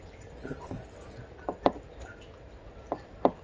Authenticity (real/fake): real